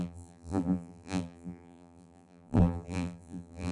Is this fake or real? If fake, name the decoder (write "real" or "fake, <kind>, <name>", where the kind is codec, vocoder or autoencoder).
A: fake, vocoder, BigVGAN v2